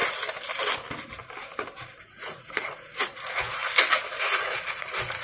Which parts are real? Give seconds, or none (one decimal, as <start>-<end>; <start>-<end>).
0.0-2.0; 3.6-4.1